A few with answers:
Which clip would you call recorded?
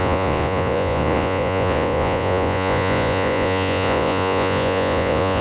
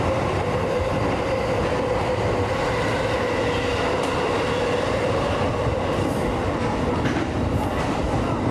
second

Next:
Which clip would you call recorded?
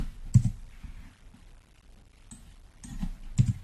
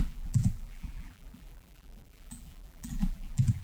first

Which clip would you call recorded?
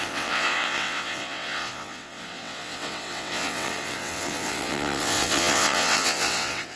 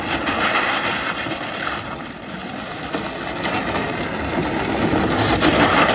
second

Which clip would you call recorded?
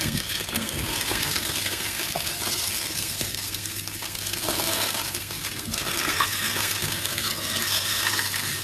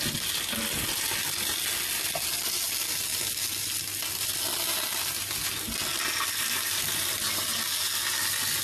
second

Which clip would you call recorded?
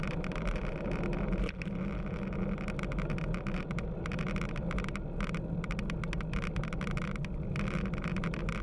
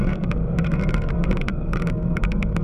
first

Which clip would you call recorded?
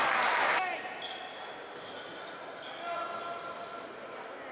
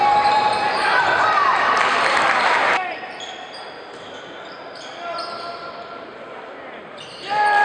first